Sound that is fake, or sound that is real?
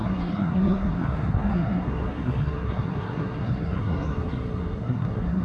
fake